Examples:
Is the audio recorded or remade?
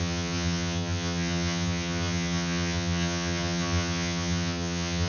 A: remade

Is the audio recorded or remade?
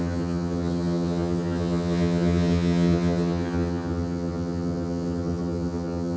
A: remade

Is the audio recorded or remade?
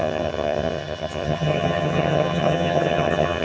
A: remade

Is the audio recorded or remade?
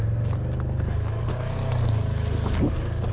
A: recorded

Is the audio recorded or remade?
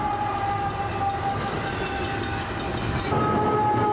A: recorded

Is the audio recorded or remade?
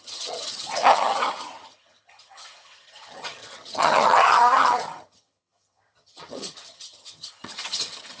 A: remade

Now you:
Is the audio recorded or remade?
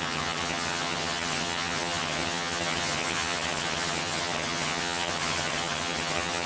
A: remade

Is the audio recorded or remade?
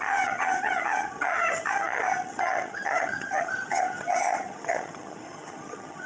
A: remade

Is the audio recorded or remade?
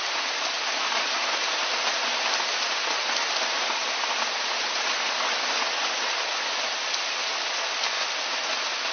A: recorded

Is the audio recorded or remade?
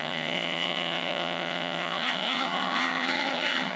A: remade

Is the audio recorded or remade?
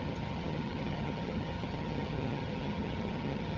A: remade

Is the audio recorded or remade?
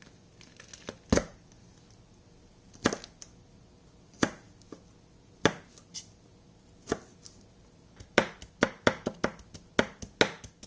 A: recorded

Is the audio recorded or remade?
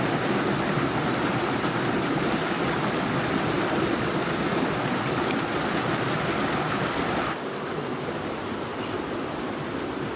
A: recorded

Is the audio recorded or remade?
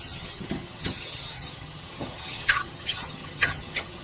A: remade